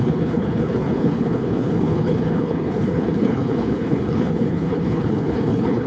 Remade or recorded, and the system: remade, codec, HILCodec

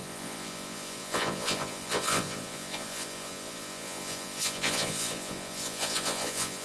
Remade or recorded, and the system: remade, vocoder, Vocos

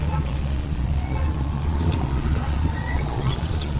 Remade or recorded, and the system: remade, vocoder, Vocos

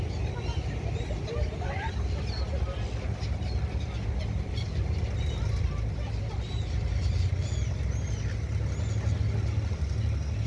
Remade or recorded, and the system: recorded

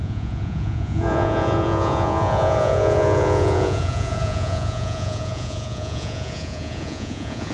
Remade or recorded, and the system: remade, vocoder, Vocos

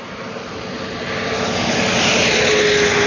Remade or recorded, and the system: recorded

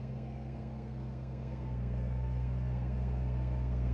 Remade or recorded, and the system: remade, codec, SNAC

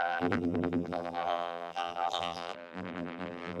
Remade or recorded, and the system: remade, vocoder, BigVGAN v2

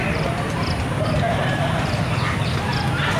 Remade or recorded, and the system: recorded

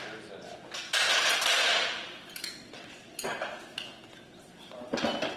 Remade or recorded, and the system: recorded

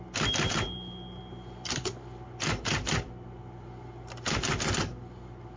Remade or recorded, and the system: recorded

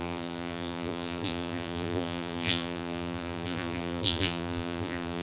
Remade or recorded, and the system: remade, vocoder, BigVGAN v2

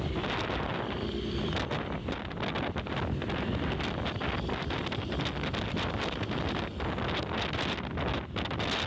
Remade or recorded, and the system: recorded